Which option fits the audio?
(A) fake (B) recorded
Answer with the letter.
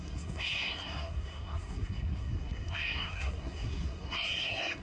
A